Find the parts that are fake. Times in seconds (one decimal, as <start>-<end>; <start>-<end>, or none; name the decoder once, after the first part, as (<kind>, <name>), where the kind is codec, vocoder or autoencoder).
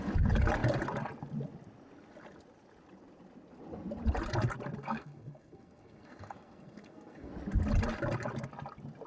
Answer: 4.8-7.3 (codec, SNAC)